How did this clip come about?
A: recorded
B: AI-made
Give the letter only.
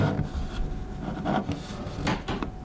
A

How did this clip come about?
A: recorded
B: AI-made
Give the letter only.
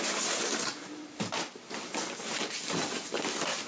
A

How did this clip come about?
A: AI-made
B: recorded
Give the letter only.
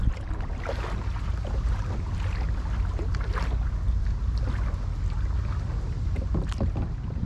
B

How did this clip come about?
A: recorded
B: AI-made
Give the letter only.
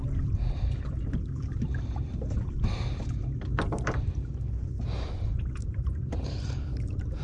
B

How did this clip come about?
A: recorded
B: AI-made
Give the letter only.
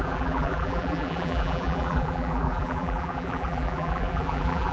B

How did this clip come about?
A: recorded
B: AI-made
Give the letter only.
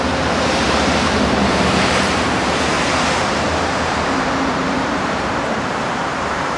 B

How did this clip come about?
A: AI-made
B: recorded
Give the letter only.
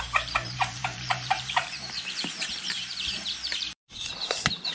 A